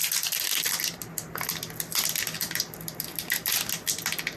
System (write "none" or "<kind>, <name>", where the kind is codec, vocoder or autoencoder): none